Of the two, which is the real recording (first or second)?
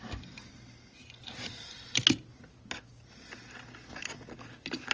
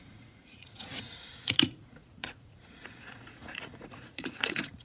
first